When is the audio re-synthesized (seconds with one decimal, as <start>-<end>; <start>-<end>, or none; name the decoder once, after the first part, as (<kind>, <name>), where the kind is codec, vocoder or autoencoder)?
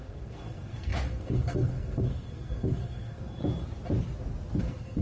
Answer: 0.0-3.4 (codec, SNAC); 4.6-5.0